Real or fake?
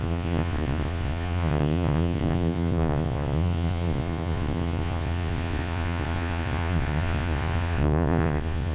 fake